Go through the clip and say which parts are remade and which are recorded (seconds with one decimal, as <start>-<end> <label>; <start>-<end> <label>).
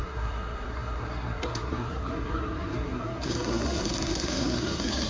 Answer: 0.0-5.1 remade